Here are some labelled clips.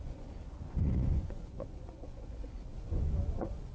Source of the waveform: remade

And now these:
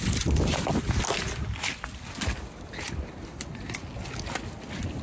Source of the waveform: recorded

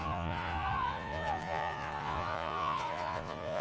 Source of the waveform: remade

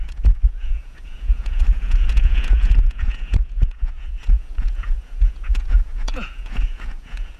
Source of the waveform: remade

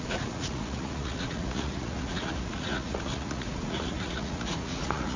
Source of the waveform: remade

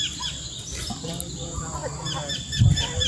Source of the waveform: recorded